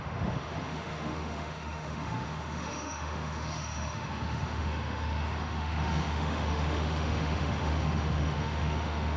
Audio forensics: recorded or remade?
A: remade